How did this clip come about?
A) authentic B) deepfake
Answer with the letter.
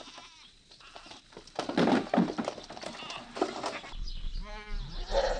A